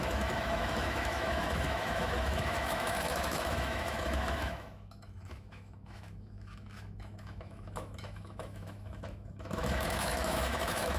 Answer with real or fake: fake